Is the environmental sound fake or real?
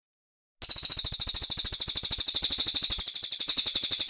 real